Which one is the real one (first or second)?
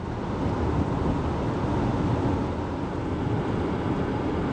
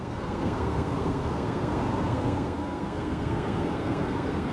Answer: first